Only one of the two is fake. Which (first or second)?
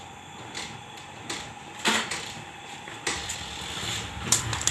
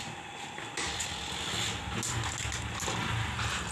first